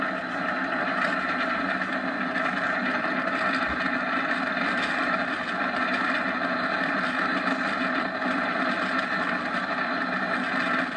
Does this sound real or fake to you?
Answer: real